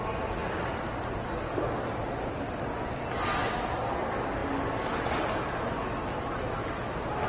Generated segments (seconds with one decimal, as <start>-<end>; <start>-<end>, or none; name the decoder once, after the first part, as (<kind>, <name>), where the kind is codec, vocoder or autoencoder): none